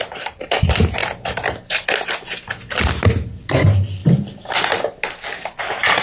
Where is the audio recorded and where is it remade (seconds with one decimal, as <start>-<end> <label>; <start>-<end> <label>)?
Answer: 0.0-1.0 remade; 1.0-3.4 recorded; 3.4-4.0 remade; 4.0-5.6 recorded; 5.6-6.0 remade